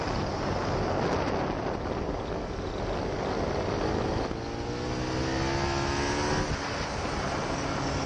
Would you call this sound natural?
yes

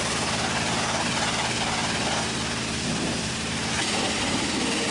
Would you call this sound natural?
yes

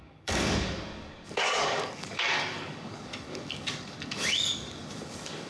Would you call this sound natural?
no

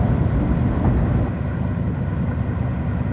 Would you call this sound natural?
yes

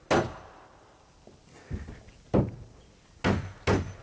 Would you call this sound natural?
yes